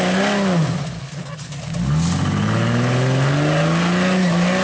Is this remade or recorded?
recorded